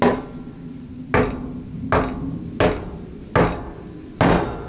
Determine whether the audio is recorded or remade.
recorded